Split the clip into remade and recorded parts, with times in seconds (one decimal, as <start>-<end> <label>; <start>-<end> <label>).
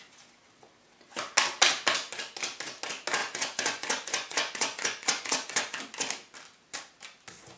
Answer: 0.0-3.2 recorded; 3.2-5.8 remade; 5.8-7.6 recorded